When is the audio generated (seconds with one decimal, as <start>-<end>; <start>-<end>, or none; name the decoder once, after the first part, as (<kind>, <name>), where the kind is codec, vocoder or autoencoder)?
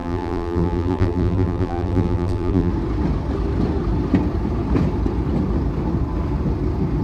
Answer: 0.0-2.7 (vocoder, BigVGAN v2)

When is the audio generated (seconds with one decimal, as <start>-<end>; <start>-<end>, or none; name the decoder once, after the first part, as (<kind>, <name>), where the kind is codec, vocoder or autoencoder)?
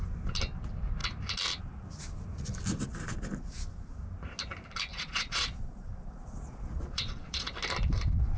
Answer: 4.9-7.5 (vocoder, Vocos)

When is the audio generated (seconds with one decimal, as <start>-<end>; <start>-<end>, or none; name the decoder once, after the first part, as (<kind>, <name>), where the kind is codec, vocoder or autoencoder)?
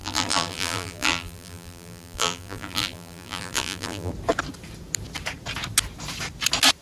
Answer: 0.0-4.1 (vocoder, BigVGAN v2)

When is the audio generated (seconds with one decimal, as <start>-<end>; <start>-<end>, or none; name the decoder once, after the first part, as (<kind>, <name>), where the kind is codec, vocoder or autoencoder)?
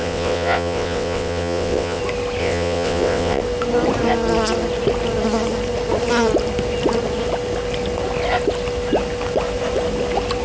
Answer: 0.0-2.0 (vocoder, WaveNeXt); 2.4-3.4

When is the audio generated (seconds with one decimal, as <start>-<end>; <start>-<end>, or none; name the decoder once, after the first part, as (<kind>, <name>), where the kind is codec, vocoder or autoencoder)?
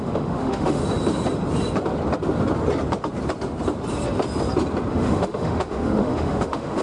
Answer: 0.0-0.8 (autoencoder, DAC-VAE); 4.9-6.8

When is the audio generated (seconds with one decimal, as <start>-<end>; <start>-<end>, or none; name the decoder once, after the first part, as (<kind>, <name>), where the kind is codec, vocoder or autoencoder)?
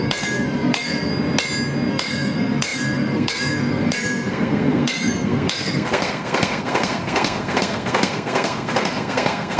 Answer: 0.0-1.1 (codec, SNAC); 1.9-9.6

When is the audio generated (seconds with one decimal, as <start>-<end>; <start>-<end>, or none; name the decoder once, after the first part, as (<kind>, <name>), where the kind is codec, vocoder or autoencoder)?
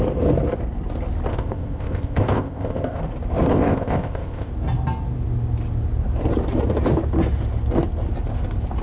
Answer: 1.3-3.0 (codec, ZipCodec); 3.5-4.5